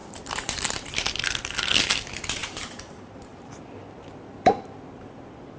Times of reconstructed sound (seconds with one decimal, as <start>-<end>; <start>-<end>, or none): 0.0-0.9; 2.4-3.5; 4.3-4.8